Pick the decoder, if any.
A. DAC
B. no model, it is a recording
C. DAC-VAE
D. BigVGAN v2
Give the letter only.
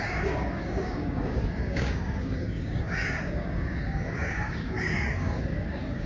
A